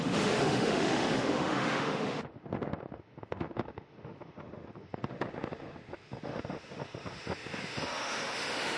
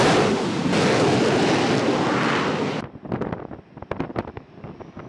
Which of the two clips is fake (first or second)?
first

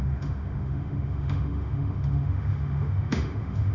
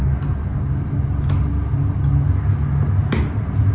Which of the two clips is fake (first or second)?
first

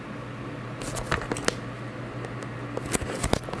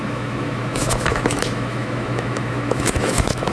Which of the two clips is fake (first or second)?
second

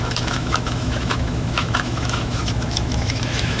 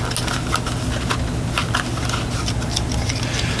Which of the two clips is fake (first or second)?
first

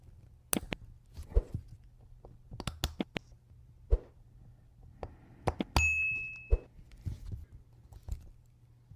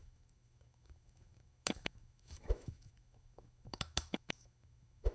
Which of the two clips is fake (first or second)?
second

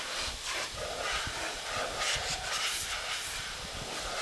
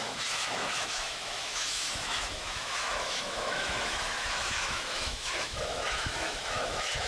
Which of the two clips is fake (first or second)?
second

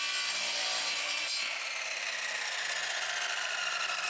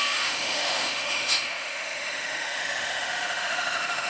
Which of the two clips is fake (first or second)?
second